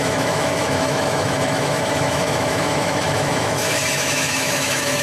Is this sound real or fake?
fake